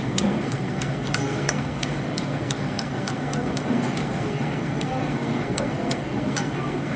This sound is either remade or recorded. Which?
remade